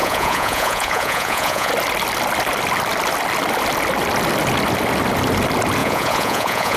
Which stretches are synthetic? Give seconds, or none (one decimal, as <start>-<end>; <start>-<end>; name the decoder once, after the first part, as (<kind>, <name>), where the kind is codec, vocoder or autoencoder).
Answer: 0.0-1.7 (vocoder, Vocos); 5.8-6.8